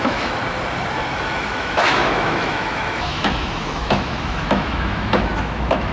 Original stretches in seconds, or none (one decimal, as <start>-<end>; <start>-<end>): 0.4-1.3